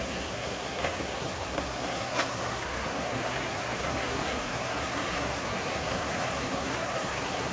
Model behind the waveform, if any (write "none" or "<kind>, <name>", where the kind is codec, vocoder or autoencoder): codec, SNAC